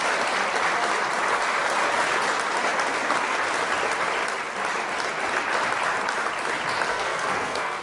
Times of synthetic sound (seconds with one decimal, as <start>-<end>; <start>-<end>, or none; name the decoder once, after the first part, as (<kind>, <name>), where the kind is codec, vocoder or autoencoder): 6.9-7.8 (codec, SNAC)